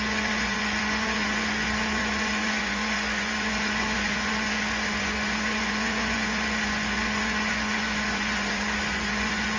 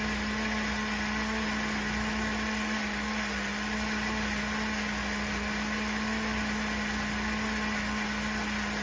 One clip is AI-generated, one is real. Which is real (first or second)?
second